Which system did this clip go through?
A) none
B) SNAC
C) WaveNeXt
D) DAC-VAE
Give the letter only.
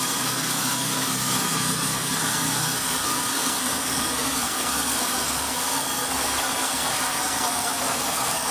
B